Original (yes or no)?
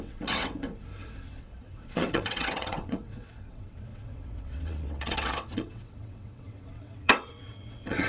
no